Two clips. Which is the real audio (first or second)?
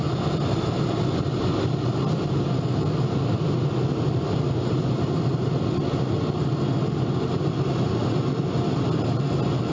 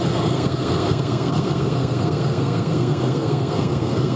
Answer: first